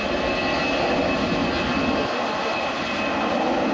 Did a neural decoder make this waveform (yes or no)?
no